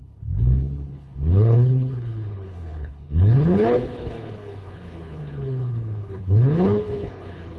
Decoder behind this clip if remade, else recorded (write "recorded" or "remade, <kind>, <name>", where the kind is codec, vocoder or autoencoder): remade, codec, HILCodec